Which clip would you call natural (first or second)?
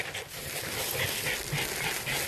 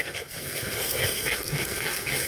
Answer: first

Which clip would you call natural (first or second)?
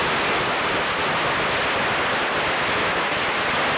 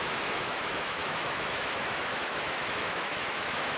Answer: first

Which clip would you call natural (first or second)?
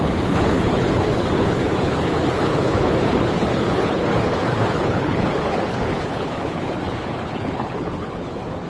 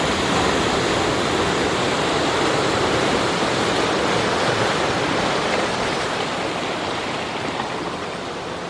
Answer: second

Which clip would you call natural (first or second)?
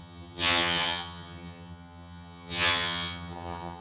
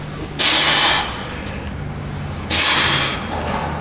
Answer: second